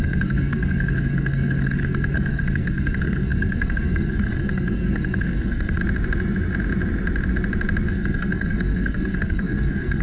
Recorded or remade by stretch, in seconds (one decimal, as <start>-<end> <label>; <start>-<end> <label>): 0.0-5.8 remade; 5.8-7.9 recorded; 7.9-10.0 remade